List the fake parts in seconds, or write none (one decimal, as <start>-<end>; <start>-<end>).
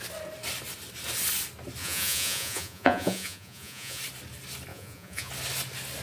1.8-4.0; 4.7-5.3